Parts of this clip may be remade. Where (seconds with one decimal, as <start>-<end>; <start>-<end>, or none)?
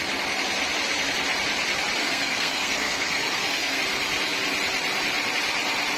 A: 2.0-3.8